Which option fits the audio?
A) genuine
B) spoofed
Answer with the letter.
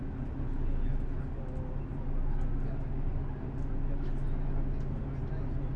A